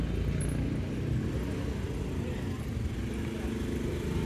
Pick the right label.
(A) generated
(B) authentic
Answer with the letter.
B